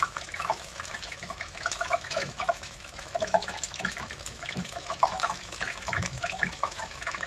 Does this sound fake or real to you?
fake